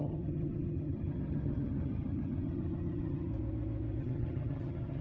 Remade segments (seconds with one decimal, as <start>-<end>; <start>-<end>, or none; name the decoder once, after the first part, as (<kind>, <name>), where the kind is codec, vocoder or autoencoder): 0.0-3.3 (vocoder, HiFi-GAN); 4.0-5.0